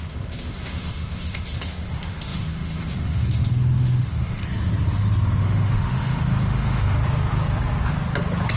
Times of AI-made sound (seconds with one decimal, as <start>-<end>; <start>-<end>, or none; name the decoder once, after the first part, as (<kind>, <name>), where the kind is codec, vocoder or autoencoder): 0.0-4.4 (autoencoder, DAC-VAE); 5.4-7.0